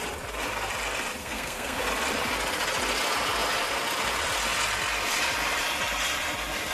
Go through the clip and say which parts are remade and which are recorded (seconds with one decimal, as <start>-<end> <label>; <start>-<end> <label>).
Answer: 0.0-1.2 recorded; 1.2-1.8 remade; 1.8-6.7 recorded